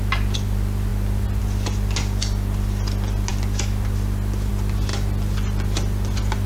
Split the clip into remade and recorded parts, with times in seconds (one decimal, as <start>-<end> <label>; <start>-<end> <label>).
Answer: 0.0-6.5 recorded